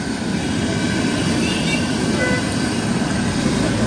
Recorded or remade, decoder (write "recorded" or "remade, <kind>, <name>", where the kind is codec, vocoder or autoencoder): recorded